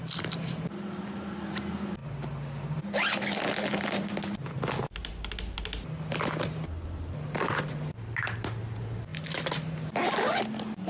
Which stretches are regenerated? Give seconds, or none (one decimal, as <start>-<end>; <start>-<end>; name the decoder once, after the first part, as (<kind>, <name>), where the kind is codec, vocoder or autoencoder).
none